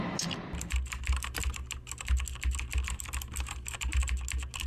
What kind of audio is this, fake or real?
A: real